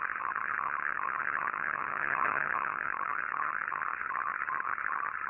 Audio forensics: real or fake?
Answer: fake